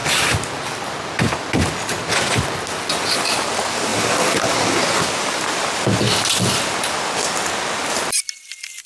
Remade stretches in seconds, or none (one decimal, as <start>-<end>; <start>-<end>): none